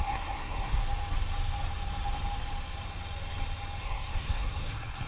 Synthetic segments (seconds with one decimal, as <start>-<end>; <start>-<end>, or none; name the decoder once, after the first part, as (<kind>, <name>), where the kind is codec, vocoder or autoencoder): 0.0-0.8 (codec, SNAC); 3.8-5.1